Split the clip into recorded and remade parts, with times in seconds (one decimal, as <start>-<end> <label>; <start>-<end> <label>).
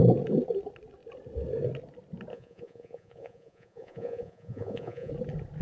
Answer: 0.0-2.3 recorded; 2.3-5.1 remade; 5.1-5.6 recorded